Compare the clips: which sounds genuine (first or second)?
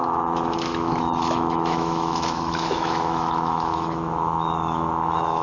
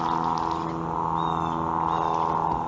second